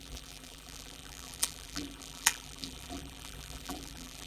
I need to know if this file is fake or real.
fake